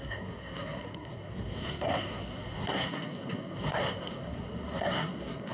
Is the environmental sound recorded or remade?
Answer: remade